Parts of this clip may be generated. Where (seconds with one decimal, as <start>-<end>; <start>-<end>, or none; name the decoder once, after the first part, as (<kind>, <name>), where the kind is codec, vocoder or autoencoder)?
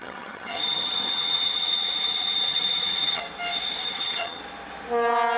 0.0-3.2 (vocoder, HiFi-GAN); 3.8-4.4